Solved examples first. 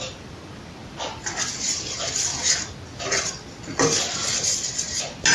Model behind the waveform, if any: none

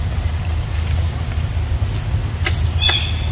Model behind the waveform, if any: none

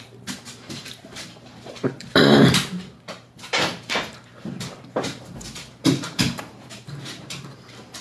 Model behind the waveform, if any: vocoder, BigVGAN v2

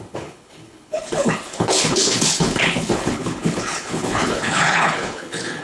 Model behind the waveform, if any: codec, HILCodec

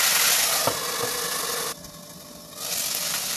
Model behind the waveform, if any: none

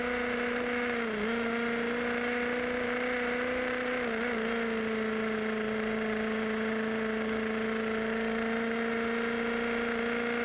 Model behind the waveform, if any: none